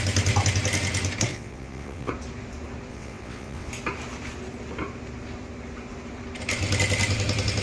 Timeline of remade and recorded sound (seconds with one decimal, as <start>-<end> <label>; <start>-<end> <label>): 0.0-1.3 recorded; 1.3-2.1 remade; 2.1-2.9 recorded; 2.9-3.7 remade; 3.7-7.6 recorded